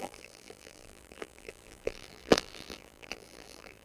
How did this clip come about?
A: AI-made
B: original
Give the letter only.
A